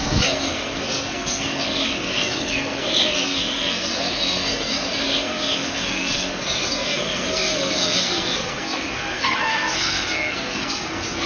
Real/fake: fake